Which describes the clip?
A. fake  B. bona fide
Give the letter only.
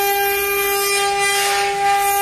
B